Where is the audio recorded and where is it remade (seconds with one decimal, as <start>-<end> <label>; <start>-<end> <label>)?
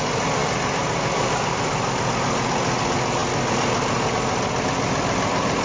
0.0-5.6 recorded